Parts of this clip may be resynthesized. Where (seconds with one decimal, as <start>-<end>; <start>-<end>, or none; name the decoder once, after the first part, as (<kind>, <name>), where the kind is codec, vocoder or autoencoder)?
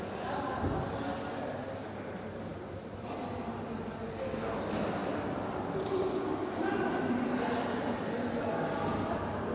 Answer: 2.5-3.5 (vocoder, BigVGAN v2); 5.0-8.7